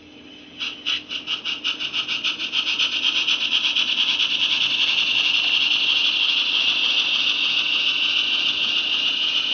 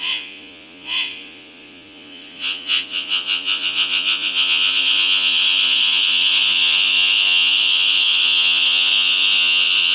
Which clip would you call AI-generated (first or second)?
second